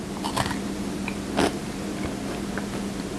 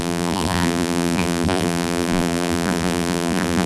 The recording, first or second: first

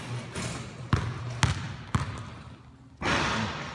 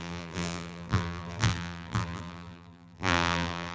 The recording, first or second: first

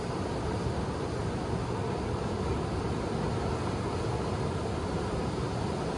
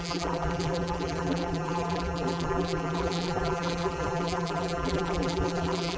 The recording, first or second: first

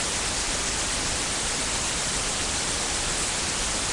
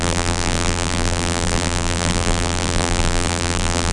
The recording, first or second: first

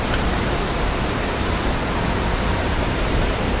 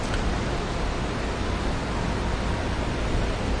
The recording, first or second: second